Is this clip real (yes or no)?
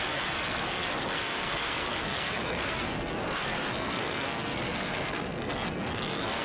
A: no